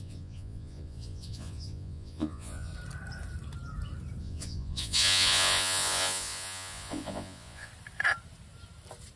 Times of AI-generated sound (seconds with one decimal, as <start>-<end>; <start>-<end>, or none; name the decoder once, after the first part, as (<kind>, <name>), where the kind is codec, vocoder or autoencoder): 0.0-2.7 (vocoder, Vocos); 4.2-7.7